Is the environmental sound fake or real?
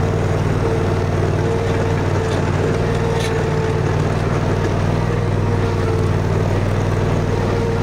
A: real